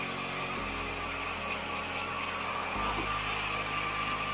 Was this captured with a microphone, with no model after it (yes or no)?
yes